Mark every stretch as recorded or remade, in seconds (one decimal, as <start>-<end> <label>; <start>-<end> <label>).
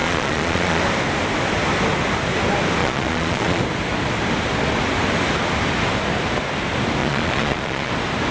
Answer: 0.0-0.8 remade; 0.8-2.8 recorded; 2.8-3.6 remade; 3.6-7.0 recorded; 7.0-7.9 remade; 7.9-8.3 recorded